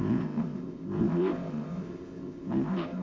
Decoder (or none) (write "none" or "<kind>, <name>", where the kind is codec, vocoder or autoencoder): codec, ZipCodec